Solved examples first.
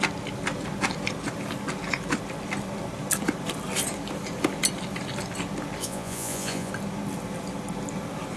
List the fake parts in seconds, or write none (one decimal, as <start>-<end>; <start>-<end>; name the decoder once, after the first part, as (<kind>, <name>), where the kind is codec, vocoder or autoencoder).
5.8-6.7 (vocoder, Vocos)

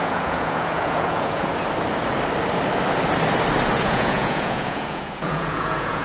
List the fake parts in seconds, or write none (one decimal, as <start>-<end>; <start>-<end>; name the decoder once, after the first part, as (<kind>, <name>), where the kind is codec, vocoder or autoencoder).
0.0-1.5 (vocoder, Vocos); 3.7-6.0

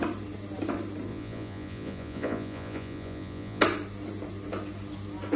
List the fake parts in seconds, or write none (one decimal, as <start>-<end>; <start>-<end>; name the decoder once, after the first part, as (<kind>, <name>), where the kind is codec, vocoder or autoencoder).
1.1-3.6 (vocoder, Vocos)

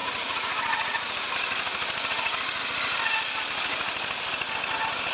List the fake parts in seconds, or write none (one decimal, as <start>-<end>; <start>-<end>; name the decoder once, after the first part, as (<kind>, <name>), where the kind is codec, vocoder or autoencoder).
0.0-1.3 (vocoder, Vocos)

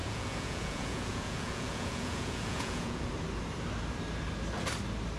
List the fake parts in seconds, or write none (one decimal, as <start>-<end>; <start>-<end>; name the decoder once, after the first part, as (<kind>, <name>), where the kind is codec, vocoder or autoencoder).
0.0-3.1 (vocoder, Vocos)

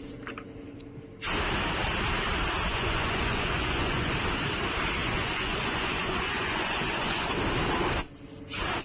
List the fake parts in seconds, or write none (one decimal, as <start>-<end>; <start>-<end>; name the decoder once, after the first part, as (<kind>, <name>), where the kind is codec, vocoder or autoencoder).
2.7-4.1 (vocoder, Vocos); 5.0-7.3